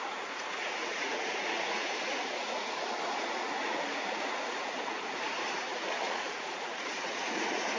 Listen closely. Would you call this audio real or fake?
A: fake